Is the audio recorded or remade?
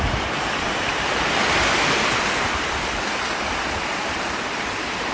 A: recorded